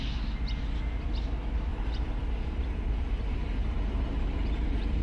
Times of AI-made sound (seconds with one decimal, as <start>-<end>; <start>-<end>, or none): 1.7-5.0